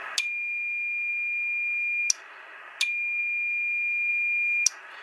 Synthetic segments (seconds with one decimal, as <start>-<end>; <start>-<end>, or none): none